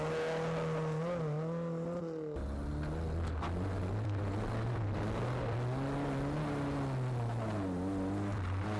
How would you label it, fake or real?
real